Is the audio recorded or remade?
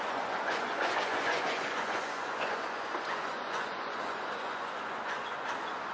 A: remade